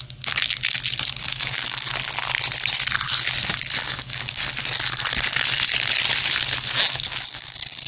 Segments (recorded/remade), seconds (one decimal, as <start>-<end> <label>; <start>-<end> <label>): 0.0-1.2 recorded; 1.2-1.9 remade; 1.9-3.8 recorded; 3.8-4.4 remade; 4.4-6.9 recorded; 6.9-7.9 remade